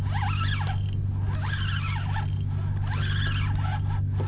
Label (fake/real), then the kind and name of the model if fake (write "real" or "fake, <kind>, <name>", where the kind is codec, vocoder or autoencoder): real